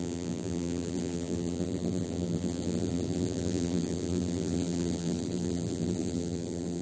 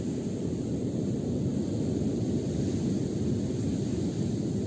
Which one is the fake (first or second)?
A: first